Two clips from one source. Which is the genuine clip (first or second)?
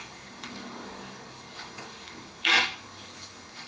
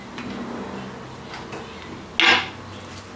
second